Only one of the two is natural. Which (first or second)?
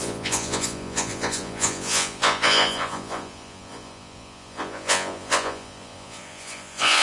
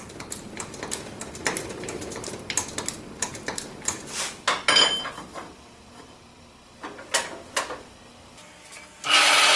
second